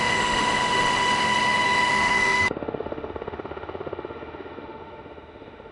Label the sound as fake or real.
fake